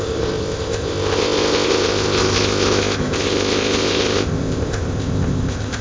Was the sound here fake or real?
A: fake